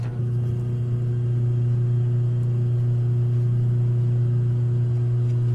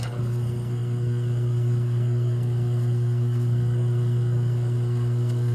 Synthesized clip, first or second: second